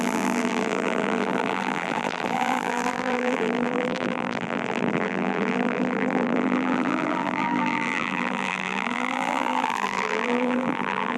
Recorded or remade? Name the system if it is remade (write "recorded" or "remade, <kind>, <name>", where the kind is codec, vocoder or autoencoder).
remade, vocoder, BigVGAN v2